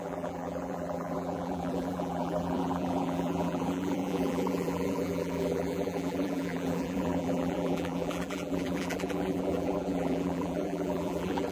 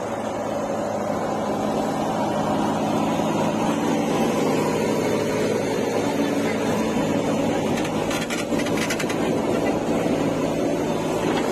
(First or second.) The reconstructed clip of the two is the first